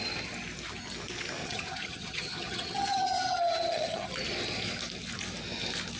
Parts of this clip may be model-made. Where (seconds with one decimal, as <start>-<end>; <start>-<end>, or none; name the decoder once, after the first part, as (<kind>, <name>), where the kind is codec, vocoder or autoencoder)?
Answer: 1.4-4.1 (vocoder, HiFi-GAN)